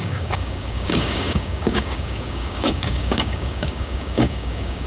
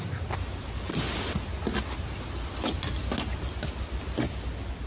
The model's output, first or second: first